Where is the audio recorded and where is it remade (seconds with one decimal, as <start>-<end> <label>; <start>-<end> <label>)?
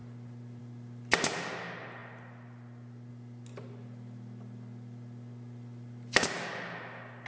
0.0-7.3 recorded